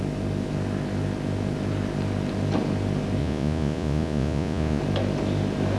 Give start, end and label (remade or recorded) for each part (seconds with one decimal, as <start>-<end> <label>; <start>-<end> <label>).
0.0-3.2 recorded; 3.2-4.8 remade; 4.8-5.8 recorded